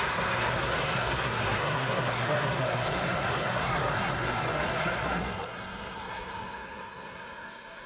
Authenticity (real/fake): fake